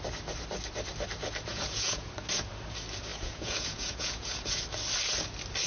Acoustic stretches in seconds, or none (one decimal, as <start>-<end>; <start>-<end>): 0.0-1.5; 2.1-3.1; 4.6-5.7